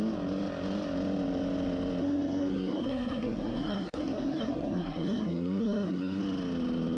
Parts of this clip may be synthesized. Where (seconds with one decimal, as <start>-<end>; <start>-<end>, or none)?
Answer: 2.0-6.2